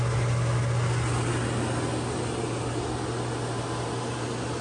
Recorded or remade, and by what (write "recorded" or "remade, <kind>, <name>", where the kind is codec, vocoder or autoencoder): recorded